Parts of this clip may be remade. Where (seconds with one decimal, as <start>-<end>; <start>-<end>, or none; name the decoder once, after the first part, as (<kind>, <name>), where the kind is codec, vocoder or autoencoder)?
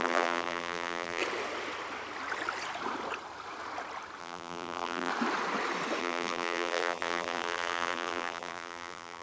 0.0-1.2 (vocoder, BigVGAN v2); 4.2-5.1; 6.0-9.2